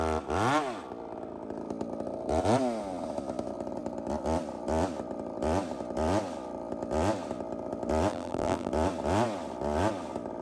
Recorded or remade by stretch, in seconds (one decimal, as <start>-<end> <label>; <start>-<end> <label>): 0.0-8.1 recorded; 8.1-8.7 remade; 8.7-10.4 recorded